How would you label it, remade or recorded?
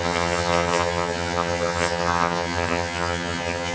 remade